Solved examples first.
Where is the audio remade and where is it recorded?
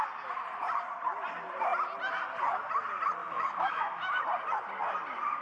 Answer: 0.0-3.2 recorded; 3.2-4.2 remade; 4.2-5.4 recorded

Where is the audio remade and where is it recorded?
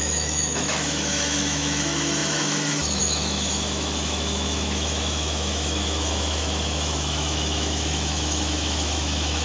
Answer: 0.0-9.4 remade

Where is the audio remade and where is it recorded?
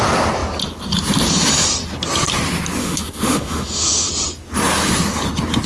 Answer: 0.0-2.8 recorded; 2.8-4.1 remade; 4.1-5.7 recorded